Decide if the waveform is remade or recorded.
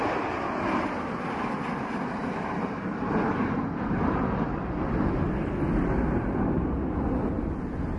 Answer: recorded